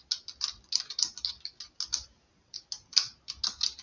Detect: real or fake real